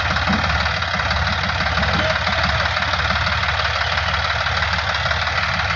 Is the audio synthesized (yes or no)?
no